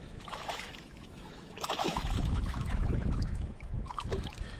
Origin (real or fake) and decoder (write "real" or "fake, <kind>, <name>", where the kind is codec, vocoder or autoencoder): fake, autoencoder, DAC-VAE